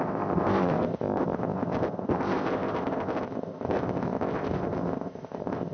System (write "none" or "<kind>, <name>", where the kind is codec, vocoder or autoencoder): codec, ZipCodec